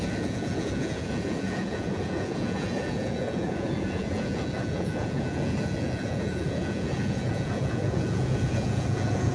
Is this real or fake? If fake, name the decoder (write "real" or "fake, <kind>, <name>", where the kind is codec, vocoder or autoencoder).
fake, vocoder, Vocos